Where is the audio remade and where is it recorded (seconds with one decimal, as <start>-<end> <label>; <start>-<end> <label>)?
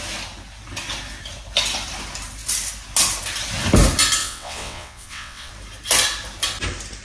0.0-4.2 recorded; 4.2-5.5 remade; 5.5-7.0 recorded